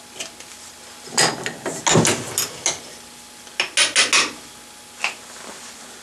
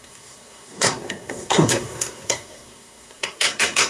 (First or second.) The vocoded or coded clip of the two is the second